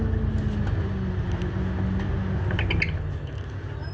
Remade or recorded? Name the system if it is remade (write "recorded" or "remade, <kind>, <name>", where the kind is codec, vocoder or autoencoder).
recorded